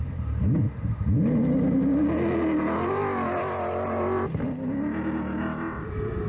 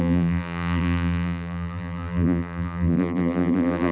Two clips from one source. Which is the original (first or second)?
first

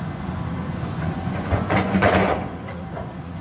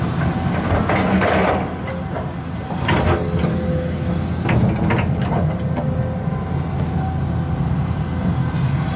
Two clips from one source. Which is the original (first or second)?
second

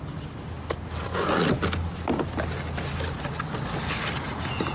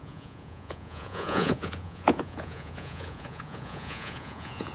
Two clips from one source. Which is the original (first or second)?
first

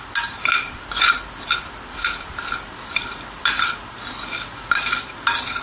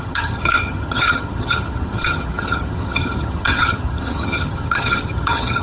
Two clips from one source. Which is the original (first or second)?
first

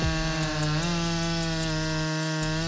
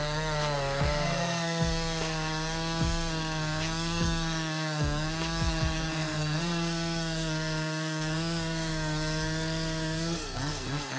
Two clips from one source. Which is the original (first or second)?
first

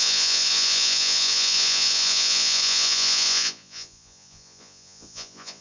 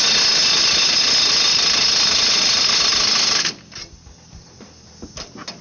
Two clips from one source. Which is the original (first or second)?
second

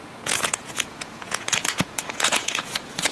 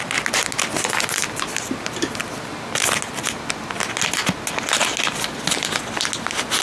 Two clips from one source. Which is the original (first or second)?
second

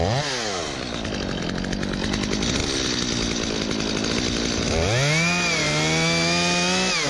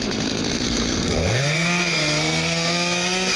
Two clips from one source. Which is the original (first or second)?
first